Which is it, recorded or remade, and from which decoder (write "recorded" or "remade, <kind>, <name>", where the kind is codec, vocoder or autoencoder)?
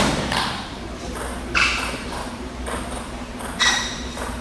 remade, vocoder, BigVGAN v2